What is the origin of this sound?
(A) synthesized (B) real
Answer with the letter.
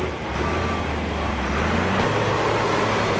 B